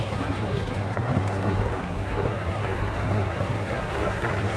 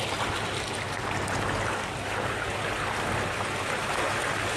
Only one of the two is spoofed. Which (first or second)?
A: first